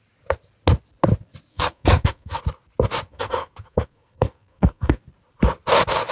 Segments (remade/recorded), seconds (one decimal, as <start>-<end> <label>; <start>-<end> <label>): 0.0-1.5 recorded; 1.5-2.4 remade; 2.4-3.1 recorded; 3.1-5.0 remade; 5.0-6.1 recorded